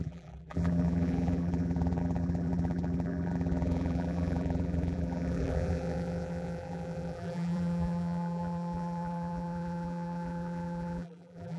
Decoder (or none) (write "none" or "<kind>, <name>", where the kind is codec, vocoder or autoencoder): vocoder, BigVGAN v2